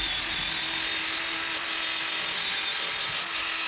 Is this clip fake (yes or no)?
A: no